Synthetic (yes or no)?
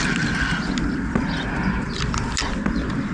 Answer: no